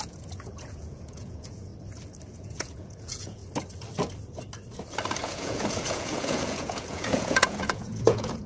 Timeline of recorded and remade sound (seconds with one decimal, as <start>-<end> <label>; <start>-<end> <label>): 0.0-1.7 remade; 1.7-2.3 recorded; 2.3-3.4 remade; 3.4-5.2 recorded; 5.2-8.5 remade